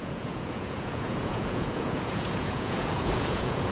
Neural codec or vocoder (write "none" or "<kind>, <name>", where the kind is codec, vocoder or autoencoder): vocoder, Vocos